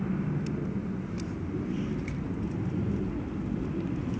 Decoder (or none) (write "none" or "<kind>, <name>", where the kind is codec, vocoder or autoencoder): none